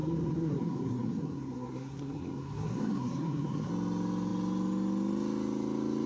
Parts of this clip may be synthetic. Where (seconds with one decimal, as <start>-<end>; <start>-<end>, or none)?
0.0-3.7